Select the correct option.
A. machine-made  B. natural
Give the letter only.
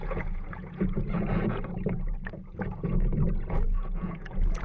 A